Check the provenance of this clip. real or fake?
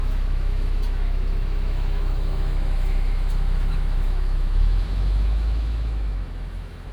fake